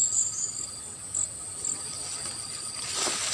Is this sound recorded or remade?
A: recorded